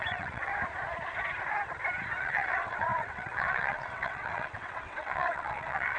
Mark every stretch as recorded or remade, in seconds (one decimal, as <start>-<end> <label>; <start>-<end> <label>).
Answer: 0.0-0.5 remade; 0.5-2.2 recorded; 2.2-6.0 remade